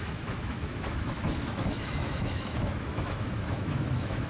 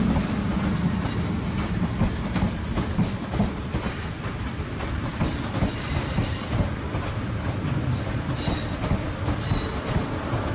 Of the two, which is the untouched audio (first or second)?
second